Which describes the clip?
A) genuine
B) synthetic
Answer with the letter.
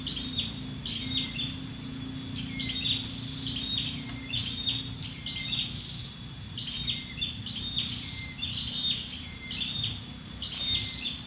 A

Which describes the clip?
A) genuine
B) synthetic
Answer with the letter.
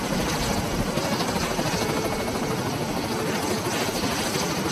A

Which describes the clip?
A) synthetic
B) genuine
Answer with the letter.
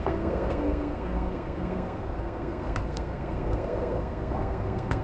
A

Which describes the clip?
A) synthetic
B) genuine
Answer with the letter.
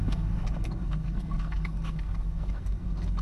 A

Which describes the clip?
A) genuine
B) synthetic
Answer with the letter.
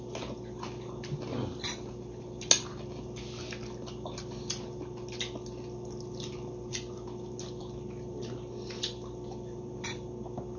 A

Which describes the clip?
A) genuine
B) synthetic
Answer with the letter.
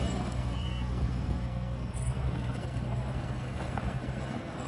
B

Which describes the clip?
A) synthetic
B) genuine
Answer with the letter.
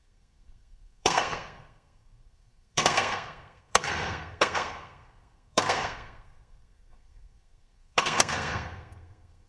A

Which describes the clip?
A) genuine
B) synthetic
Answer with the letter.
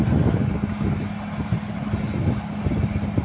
A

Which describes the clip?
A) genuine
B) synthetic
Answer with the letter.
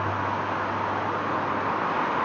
A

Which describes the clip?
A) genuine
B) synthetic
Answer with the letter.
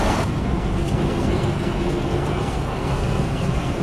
B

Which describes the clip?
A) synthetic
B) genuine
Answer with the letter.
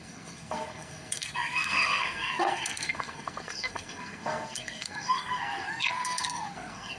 A